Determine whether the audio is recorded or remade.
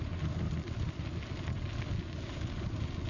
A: recorded